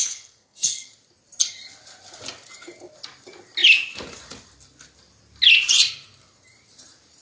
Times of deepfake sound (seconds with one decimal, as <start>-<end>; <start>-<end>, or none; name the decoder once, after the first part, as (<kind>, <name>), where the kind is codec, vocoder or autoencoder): 0.0-0.9 (codec, SNAC)

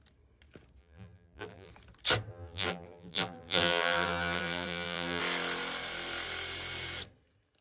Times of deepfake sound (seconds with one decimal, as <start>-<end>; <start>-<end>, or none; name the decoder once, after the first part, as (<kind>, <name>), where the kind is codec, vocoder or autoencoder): 0.8-1.7 (vocoder, BigVGAN v2); 2.3-5.2

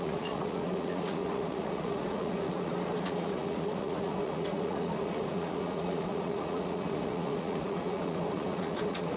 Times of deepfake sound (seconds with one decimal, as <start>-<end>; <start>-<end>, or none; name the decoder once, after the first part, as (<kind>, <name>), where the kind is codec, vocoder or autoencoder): 0.0-9.2 (vocoder, Vocos)

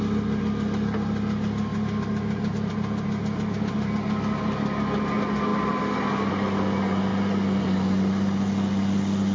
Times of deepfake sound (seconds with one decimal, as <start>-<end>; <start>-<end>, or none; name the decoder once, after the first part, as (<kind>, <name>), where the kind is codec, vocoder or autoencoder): none